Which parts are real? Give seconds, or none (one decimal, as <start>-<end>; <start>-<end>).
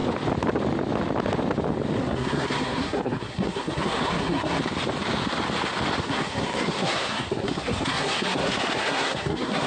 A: 0.0-2.0; 4.6-6.0